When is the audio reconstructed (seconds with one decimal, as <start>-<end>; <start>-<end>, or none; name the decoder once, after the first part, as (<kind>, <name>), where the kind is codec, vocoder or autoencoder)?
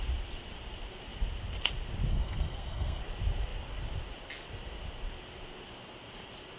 2.1-3.0 (codec, SNAC)